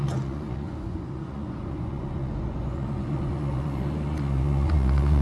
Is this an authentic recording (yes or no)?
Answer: no